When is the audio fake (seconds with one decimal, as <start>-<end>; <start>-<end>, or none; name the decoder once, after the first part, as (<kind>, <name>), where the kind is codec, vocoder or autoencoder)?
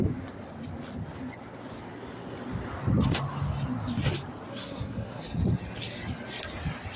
4.5-5.2 (codec, SNAC)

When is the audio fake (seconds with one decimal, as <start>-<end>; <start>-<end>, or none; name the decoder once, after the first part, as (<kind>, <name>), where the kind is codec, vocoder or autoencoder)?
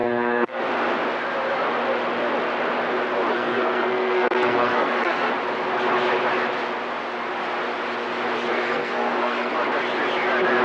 0.0-0.6 (codec, SNAC); 3.3-5.3; 8.5-9.5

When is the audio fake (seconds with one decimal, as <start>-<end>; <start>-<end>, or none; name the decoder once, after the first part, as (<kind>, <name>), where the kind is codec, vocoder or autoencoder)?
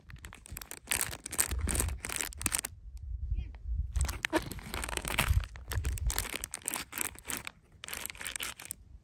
4.8-5.3 (codec, SNAC)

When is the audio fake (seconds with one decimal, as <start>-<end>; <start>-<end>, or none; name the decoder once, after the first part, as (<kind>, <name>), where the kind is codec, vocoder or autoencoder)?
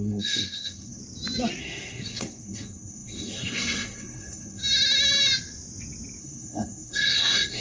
0.0-1.0 (codec, SNAC); 1.6-4.6; 6.2-7.6